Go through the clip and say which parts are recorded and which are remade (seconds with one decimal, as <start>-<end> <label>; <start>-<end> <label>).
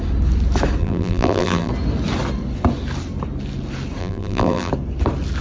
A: 0.0-0.8 recorded; 0.8-1.7 remade; 1.7-4.0 recorded; 4.0-4.7 remade; 4.7-5.4 recorded